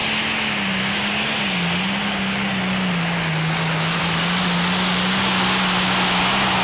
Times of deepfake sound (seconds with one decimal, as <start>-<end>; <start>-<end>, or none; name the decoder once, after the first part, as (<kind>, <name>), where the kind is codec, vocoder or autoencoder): none